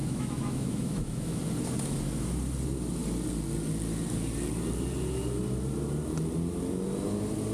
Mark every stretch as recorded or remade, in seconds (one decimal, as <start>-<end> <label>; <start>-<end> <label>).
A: 0.0-1.4 remade; 1.4-7.5 recorded